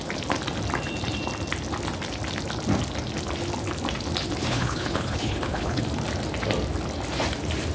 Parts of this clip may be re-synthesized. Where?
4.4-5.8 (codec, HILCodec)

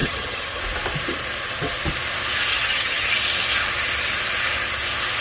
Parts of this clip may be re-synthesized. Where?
0.0-0.6 (vocoder, HiFi-GAN); 2.5-3.1

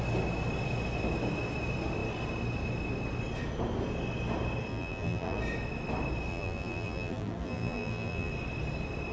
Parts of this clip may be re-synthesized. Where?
4.7-5.4 (vocoder, BigVGAN v2); 6.3-8.3